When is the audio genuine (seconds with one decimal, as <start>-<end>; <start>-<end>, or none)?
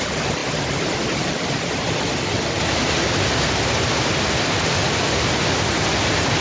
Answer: 0.0-6.4